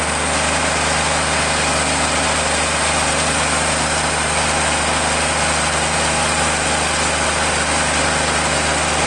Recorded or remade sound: recorded